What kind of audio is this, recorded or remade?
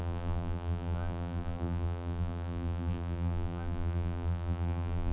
remade